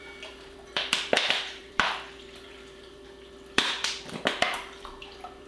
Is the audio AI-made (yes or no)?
yes